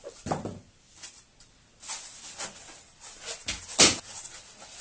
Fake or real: real